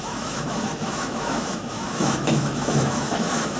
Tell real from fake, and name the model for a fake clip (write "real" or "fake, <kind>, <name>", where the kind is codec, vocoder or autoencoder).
fake, autoencoder, DAC-VAE